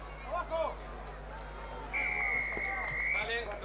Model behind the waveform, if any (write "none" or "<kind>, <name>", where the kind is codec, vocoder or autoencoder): none